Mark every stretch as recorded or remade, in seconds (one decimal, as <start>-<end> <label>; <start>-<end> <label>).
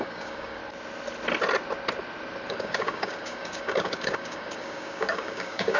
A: 0.0-0.6 remade; 0.6-2.5 recorded; 2.5-5.8 remade